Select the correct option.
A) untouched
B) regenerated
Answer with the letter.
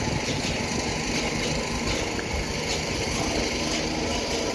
A